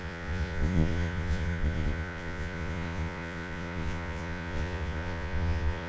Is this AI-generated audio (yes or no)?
yes